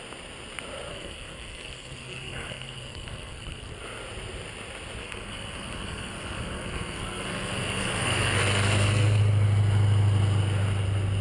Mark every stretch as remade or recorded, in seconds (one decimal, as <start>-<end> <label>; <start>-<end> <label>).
0.0-0.9 recorded; 0.9-3.8 remade; 3.8-5.0 recorded; 5.0-9.2 remade; 9.2-11.2 recorded